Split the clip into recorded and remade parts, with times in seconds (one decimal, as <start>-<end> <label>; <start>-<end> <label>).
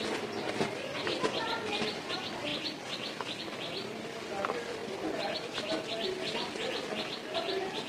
0.0-4.8 recorded; 4.8-5.7 remade; 5.7-7.9 recorded